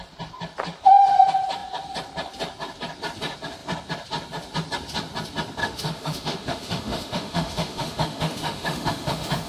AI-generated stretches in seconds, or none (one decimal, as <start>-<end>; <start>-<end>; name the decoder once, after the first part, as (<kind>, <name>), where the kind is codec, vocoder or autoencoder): 5.6-9.5 (autoencoder, DAC-VAE)